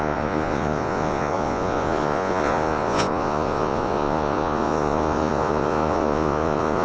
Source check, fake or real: fake